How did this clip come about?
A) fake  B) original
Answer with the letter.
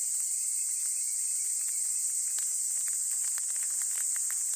B